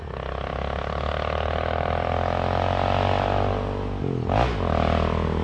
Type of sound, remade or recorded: recorded